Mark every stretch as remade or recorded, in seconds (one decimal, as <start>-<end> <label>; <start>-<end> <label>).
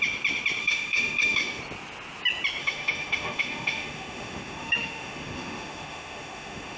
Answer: 0.0-0.6 recorded; 0.6-1.6 remade; 1.6-2.6 recorded; 2.6-6.8 remade